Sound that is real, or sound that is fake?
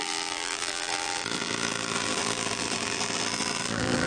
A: fake